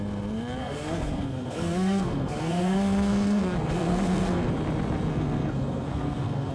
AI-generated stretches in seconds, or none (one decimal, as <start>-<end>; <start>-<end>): 0.6-4.5; 5.1-6.5